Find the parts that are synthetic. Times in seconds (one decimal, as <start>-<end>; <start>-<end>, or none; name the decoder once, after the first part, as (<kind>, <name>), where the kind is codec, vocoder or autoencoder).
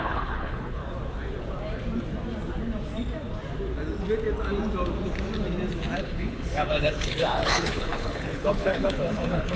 0.0-0.8 (codec, HILCodec); 6.0-9.6